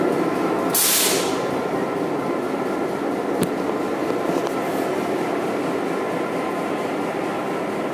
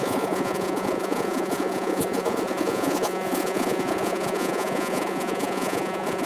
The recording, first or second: first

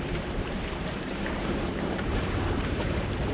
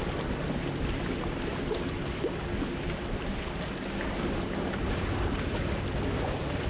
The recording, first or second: second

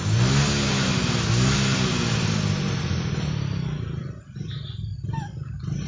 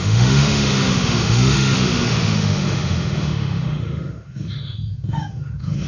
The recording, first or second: first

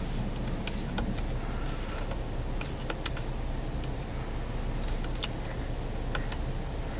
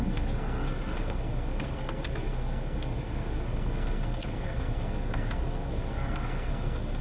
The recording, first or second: first